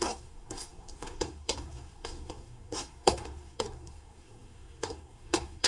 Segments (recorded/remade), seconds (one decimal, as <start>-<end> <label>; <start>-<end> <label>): 0.0-5.7 remade